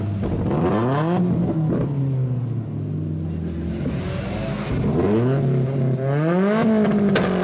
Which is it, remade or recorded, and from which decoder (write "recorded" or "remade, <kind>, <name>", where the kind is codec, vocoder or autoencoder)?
recorded